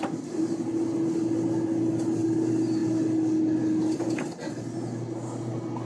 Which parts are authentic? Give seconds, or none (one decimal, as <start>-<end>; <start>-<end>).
0.0-5.9